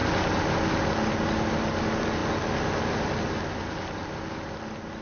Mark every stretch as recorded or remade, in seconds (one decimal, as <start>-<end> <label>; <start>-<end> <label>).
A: 0.0-5.0 recorded